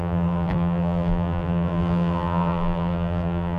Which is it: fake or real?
fake